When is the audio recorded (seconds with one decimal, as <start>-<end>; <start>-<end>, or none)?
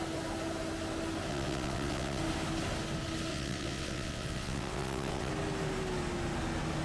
0.0-1.3; 2.2-3.3; 5.3-6.8